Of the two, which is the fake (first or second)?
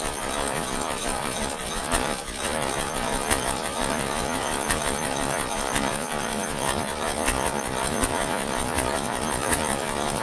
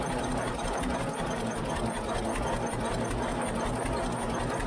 first